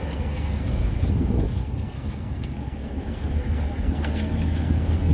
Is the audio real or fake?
fake